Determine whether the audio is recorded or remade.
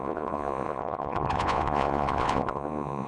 remade